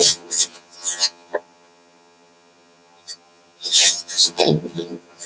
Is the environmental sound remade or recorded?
remade